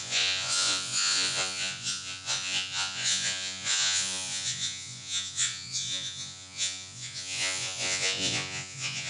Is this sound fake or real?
fake